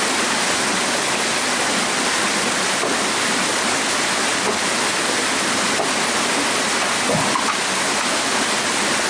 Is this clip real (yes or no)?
yes